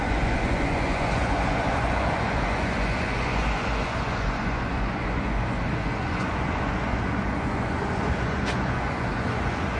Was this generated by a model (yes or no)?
yes